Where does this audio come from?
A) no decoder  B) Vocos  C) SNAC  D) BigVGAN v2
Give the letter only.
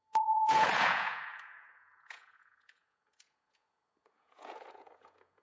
B